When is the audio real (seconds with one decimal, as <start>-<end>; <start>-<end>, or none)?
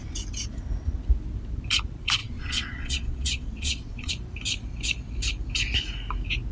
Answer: 0.0-2.2; 4.1-6.5